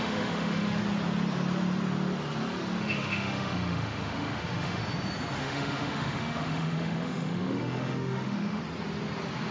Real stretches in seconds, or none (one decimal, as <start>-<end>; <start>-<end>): 0.8-2.8; 4.8-5.4; 8.6-9.5